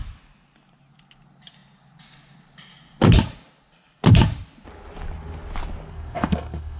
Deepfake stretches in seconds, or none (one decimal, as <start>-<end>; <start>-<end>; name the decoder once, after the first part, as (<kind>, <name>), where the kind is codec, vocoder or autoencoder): 5.9-6.8 (codec, SNAC)